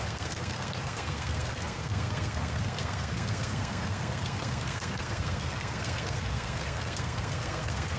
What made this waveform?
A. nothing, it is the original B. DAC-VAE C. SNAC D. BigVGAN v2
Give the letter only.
C